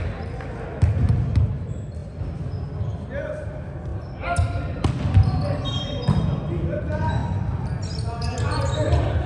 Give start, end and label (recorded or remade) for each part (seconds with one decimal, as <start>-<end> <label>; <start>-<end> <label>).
0.0-9.3 recorded